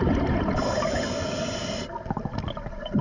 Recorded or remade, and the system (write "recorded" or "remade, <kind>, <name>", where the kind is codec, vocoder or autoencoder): recorded